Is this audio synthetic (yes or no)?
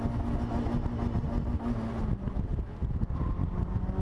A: no